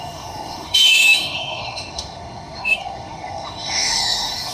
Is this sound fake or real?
fake